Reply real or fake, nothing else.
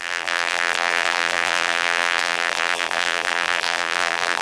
fake